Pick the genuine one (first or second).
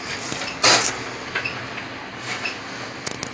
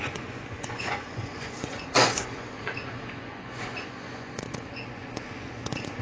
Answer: first